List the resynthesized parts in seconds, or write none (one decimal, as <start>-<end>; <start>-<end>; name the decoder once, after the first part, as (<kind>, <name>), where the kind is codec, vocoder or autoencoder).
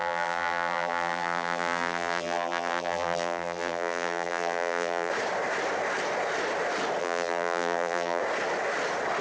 0.0-5.1 (vocoder, BigVGAN v2); 7.0-8.2